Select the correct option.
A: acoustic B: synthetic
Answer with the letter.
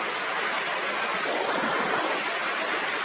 A